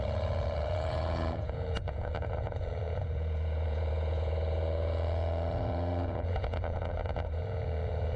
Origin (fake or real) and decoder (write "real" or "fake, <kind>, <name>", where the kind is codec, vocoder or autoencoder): fake, vocoder, Vocos